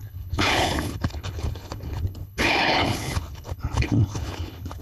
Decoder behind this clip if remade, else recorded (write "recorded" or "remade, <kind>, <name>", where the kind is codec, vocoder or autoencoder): remade, codec, HILCodec